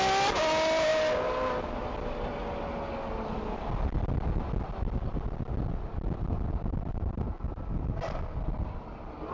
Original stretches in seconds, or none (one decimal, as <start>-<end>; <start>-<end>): 0.0-9.3

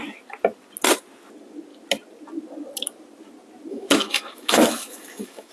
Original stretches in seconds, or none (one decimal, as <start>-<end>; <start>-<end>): 0.0-3.7

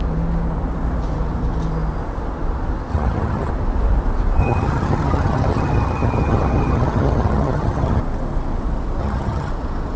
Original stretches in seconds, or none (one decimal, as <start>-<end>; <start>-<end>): 0.0-2.9; 3.5-4.4; 8.0-9.0; 9.5-10.0

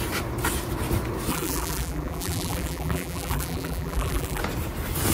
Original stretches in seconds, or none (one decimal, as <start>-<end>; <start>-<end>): 0.0-1.3; 4.4-5.1